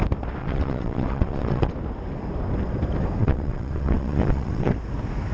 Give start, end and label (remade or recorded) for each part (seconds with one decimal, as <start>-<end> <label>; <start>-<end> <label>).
0.0-0.4 recorded; 0.4-1.7 remade; 1.7-3.2 recorded; 3.2-4.7 remade; 4.7-5.3 recorded